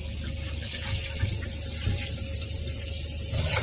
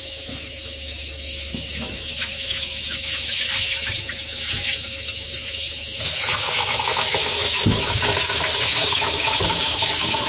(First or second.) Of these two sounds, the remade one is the second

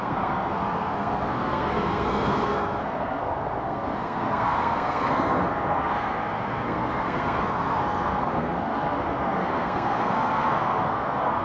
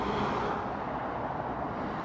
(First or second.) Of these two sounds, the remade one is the first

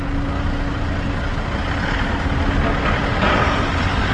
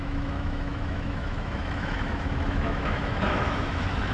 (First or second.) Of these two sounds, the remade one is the second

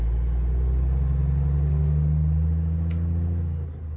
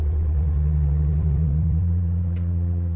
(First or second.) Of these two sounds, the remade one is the second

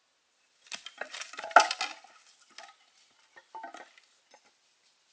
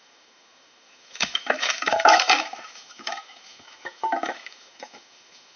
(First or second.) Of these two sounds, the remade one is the second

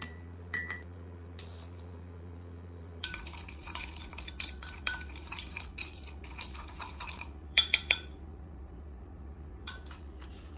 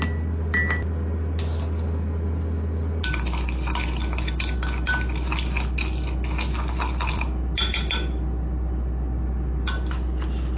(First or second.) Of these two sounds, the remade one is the first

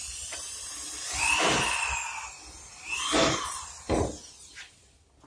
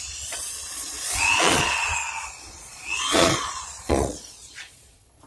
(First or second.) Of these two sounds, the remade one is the second